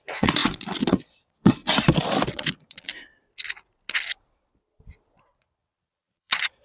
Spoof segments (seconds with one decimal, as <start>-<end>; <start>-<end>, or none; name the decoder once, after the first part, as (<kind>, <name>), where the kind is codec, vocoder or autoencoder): 0.0-1.6 (vocoder, Vocos); 2.3-2.9; 5.4-6.6